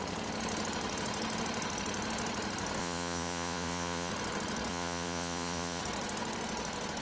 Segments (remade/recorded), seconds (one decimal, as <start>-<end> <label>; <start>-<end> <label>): 0.0-2.8 recorded; 2.8-4.1 remade; 4.1-4.7 recorded; 4.7-5.8 remade; 5.8-7.0 recorded